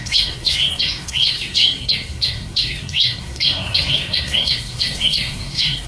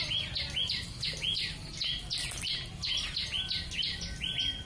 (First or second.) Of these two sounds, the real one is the second